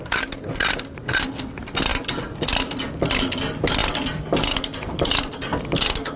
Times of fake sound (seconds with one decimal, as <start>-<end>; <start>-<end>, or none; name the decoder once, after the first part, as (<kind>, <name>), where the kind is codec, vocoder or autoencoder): none